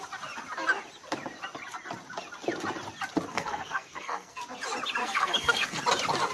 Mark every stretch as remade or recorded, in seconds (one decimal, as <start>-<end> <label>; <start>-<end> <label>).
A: 0.0-3.3 recorded; 3.3-4.4 remade; 4.4-5.0 recorded; 5.0-5.8 remade; 5.8-6.3 recorded